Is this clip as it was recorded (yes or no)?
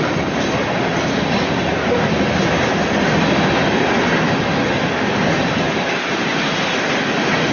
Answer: yes